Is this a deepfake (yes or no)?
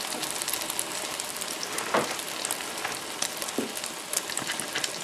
no